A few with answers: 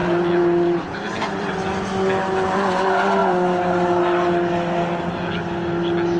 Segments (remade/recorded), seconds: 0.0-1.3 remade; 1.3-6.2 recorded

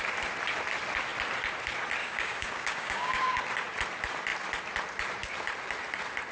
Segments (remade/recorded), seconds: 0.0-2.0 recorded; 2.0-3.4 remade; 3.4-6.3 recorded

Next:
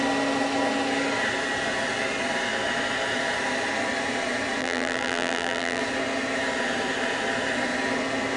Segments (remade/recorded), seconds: 0.0-4.6 recorded; 4.6-5.8 remade; 5.8-8.4 recorded

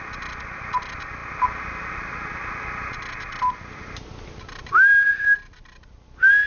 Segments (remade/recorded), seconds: 0.0-6.5 recorded

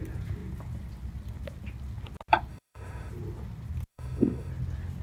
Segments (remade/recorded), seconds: 0.0-2.5 recorded; 2.5-3.1 remade; 3.1-3.9 recorded; 3.9-4.5 remade; 4.5-5.0 recorded